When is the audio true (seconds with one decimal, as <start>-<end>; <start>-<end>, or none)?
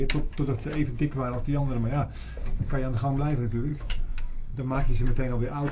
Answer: 0.0-3.7